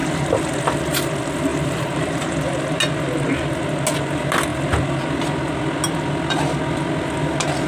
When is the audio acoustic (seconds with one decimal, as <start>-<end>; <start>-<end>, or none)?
0.0-1.5; 2.3-7.7